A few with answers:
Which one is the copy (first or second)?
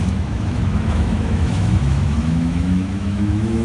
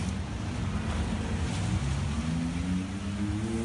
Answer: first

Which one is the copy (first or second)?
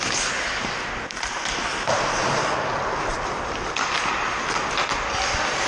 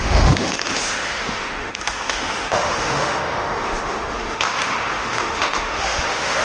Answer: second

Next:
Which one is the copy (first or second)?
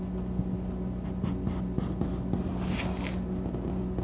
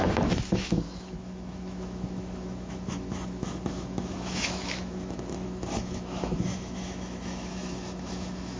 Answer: second